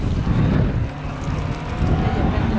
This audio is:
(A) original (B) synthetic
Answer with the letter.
A